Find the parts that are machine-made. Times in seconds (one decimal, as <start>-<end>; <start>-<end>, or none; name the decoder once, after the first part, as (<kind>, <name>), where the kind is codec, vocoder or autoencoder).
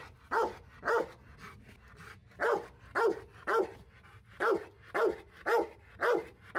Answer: none